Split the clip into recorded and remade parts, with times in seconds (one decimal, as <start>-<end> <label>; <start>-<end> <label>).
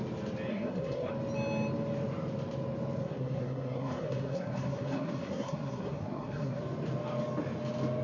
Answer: 0.0-0.5 recorded; 0.5-1.1 remade; 1.1-3.0 recorded; 3.0-6.6 remade; 6.6-8.0 recorded